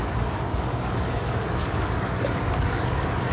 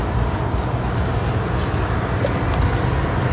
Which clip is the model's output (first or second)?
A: first